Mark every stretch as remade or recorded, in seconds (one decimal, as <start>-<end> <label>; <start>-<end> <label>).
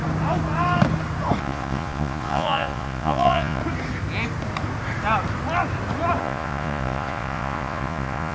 0.0-1.4 recorded; 1.4-3.6 remade; 3.6-6.2 recorded; 6.2-8.3 remade